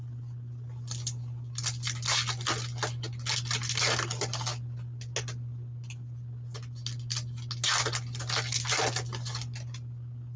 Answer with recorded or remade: recorded